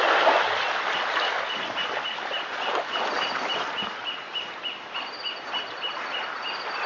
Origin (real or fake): real